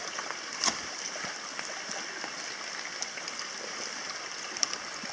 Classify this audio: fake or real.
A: real